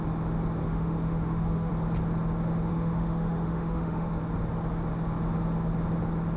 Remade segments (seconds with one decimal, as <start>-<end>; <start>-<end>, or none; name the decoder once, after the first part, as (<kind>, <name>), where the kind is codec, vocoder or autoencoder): 0.6-1.7 (autoencoder, DAC-VAE); 2.7-4.2